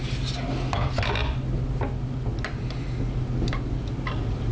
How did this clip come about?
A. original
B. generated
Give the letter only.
A